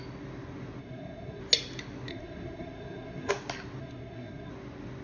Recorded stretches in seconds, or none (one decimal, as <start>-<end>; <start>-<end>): 0.0-0.8; 1.4-2.1; 3.3-3.8; 4.5-5.0